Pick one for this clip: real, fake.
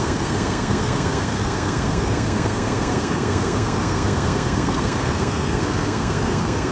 fake